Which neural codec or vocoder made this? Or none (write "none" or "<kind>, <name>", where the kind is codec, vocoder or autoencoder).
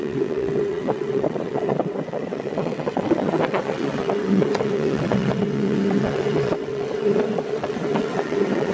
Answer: vocoder, WaveNeXt